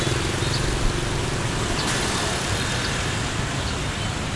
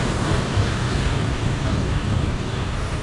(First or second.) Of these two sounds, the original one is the first